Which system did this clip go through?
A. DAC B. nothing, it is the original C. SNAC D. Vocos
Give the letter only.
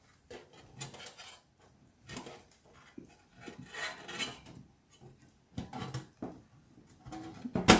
B